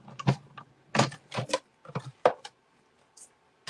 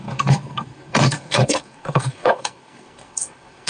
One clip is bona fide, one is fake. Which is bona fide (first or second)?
first